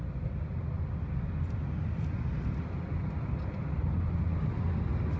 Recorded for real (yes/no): yes